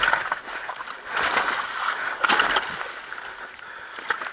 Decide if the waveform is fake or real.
real